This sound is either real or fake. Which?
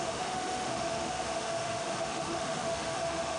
fake